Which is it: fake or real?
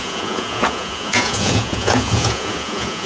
fake